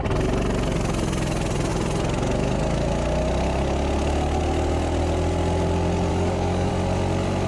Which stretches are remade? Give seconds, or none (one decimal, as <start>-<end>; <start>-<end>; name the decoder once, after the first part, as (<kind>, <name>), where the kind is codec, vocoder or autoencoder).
6.1-6.7 (codec, DAC)